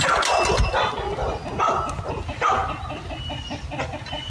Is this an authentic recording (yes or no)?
yes